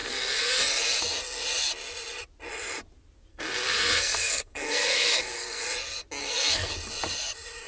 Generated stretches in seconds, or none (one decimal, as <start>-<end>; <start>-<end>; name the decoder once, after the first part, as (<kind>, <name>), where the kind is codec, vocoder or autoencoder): 0.0-0.6 (codec, SNAC); 3.3-5.6; 6.2-6.7